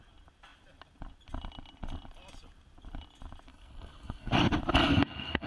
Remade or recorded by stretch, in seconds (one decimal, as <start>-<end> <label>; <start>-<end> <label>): 0.0-3.5 recorded; 3.5-4.3 remade; 4.3-4.8 recorded; 4.8-5.5 remade